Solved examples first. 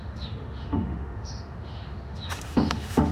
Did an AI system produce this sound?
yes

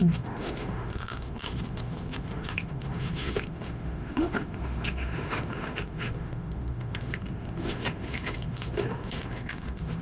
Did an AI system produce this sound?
yes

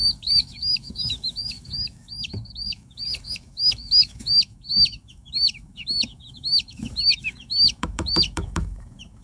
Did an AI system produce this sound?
yes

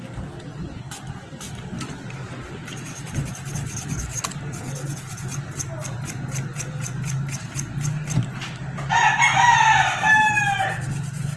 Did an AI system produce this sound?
no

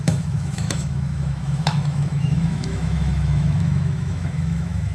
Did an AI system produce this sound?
yes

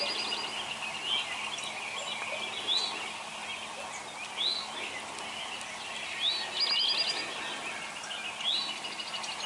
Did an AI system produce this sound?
no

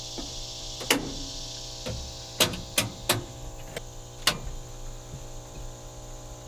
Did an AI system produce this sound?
no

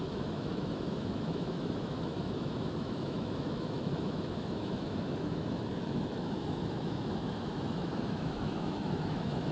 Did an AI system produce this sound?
yes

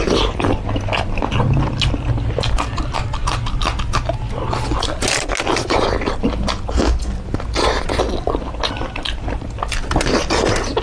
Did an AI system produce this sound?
no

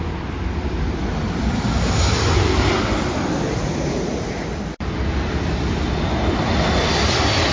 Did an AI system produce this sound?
no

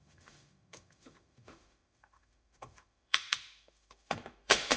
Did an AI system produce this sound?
yes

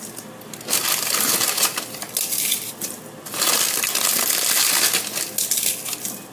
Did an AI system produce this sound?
no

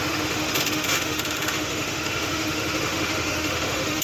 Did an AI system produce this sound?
yes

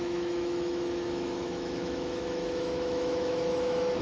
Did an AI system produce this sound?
yes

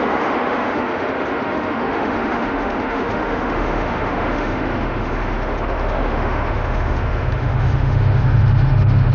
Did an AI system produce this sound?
yes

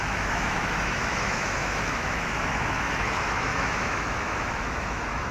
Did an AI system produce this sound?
yes